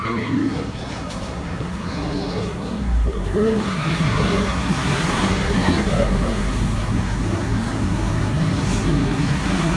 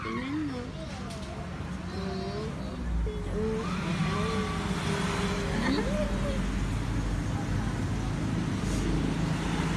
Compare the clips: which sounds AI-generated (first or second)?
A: first